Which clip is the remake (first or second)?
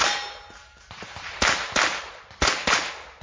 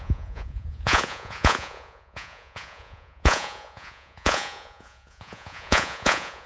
second